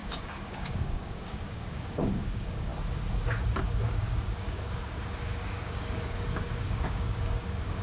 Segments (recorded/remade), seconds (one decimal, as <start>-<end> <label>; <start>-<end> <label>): 0.0-2.7 remade; 2.7-3.6 recorded; 3.6-7.8 remade